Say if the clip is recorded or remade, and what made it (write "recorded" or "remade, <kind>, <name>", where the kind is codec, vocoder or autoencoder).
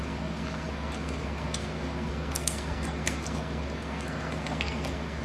remade, codec, SNAC